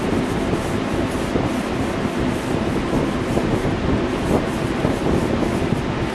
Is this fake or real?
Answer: real